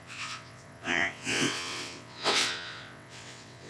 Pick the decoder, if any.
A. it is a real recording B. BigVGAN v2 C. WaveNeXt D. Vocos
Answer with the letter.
C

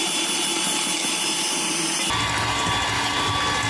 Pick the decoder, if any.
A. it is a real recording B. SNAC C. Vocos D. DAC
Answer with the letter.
A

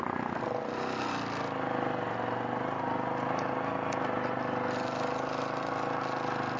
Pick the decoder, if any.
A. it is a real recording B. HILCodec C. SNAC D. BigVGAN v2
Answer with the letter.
A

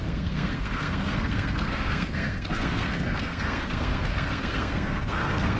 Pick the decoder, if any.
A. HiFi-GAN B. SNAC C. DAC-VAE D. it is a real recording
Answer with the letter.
B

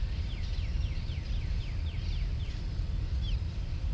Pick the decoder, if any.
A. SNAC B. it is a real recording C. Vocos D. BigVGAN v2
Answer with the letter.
B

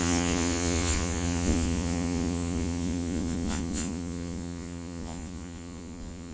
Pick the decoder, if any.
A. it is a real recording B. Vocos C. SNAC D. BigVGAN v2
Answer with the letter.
B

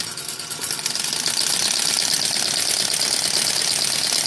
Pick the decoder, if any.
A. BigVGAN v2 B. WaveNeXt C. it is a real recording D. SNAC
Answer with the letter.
C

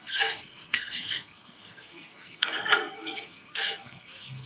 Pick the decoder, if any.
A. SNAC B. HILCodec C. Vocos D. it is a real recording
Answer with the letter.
A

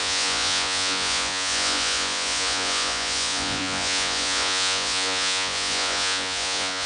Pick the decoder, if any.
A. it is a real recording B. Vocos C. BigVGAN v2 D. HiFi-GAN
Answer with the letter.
B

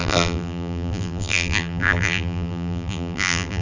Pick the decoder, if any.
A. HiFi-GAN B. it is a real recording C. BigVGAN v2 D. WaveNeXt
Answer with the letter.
C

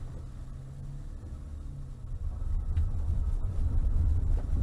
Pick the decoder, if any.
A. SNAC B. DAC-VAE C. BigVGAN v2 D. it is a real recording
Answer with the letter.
D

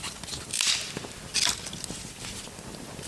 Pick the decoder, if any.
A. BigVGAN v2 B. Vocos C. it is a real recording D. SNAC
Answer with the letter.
C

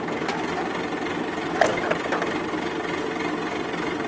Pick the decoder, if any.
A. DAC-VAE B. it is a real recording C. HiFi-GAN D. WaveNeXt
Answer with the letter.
B